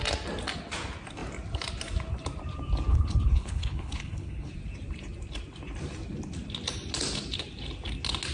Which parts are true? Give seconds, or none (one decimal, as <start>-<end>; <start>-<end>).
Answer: 0.0-2.9; 4.5-8.3